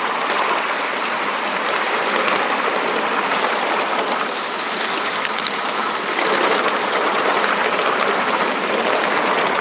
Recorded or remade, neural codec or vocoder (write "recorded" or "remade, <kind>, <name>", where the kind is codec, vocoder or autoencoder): recorded